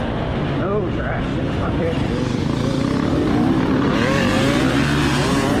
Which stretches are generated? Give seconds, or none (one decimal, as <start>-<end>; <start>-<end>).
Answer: 1.3-4.7